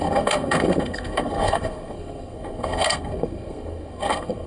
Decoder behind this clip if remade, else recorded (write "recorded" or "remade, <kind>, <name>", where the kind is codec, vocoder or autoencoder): remade, codec, SNAC